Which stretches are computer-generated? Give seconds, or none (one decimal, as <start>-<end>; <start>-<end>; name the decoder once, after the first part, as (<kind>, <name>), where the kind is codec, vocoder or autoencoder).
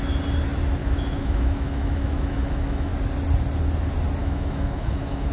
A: 0.8-2.9 (autoencoder, DAC-VAE); 4.2-5.3